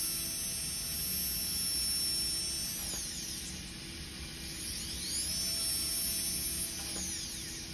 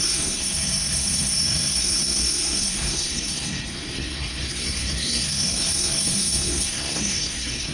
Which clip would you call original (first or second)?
first